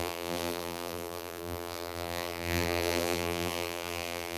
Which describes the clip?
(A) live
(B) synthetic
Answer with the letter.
B